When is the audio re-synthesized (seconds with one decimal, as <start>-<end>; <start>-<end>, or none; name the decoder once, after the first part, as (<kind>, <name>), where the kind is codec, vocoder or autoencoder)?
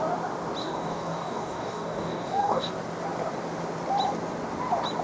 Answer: 0.6-2.7 (codec, DAC)